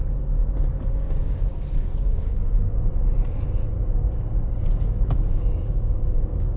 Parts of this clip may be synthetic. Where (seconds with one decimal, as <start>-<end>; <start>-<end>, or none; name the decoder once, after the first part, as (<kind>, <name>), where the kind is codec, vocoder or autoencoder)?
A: 0.0-0.4 (codec, DAC); 1.2-2.9; 4.5-6.6